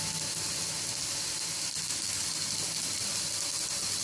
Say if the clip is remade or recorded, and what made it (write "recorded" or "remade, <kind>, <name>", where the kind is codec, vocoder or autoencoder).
recorded